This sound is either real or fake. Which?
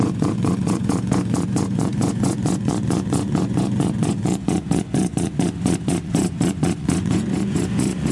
fake